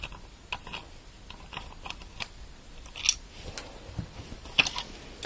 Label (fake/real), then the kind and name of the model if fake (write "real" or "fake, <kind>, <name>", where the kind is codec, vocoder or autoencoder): real